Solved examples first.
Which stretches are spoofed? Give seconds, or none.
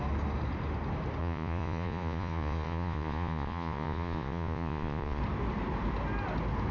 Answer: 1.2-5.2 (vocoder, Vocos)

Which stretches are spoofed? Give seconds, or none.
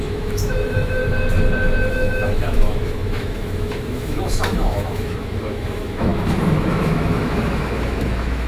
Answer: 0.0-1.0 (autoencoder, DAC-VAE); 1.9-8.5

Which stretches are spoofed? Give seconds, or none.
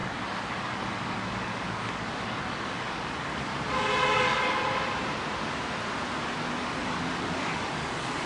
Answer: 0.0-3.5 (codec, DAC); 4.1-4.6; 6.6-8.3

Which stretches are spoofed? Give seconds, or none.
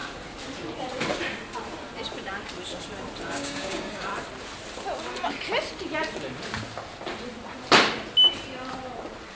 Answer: 3.2-4.1 (codec, DAC)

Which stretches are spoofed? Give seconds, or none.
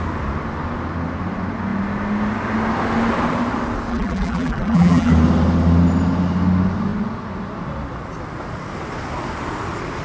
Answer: 3.9-5.1 (vocoder, BigVGAN v2)